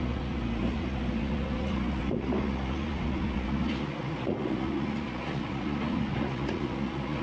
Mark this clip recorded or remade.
remade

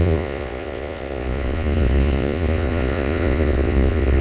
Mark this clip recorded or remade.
remade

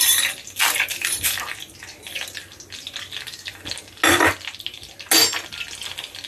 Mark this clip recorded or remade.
recorded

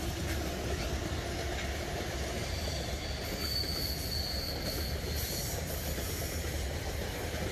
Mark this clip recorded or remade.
recorded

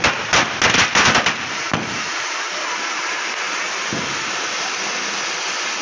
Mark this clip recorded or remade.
recorded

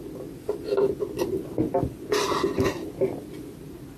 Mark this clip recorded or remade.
recorded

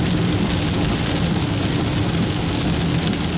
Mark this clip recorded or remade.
recorded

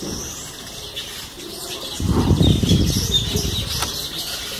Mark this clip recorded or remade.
remade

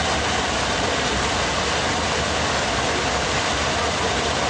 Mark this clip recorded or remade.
recorded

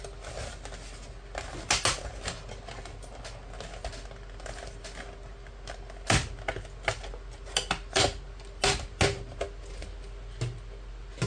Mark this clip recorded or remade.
recorded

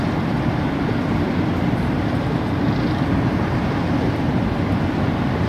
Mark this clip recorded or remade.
recorded